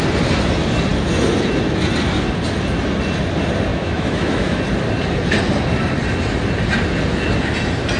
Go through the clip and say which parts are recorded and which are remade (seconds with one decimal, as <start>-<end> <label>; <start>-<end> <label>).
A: 0.0-3.7 recorded; 3.7-4.6 remade; 4.6-8.0 recorded